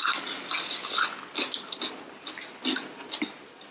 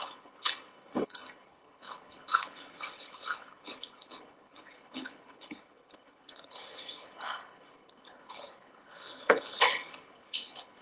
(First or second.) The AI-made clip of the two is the second